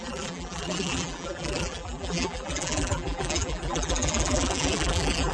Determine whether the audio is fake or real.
fake